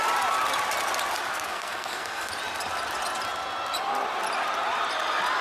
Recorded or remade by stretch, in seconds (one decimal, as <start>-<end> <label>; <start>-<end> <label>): 0.0-1.3 recorded; 1.3-2.3 remade; 2.3-5.4 recorded